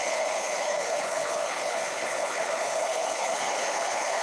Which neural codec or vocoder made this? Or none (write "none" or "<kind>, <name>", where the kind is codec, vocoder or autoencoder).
codec, HILCodec